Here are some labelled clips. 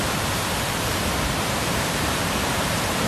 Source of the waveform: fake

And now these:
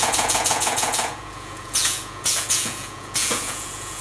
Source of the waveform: fake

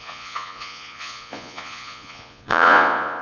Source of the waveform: fake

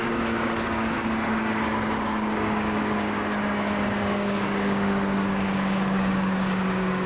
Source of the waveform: fake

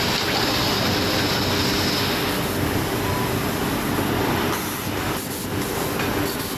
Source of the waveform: real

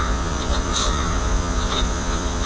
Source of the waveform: fake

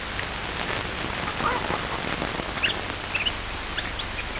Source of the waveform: real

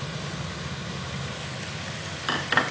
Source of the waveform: real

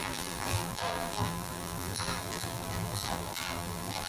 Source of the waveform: fake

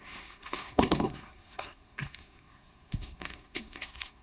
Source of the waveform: fake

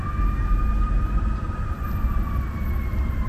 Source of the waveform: real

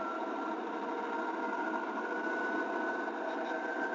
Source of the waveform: real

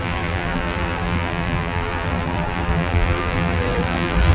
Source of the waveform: fake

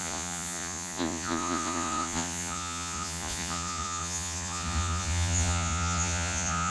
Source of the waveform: fake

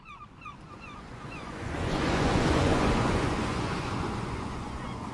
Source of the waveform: fake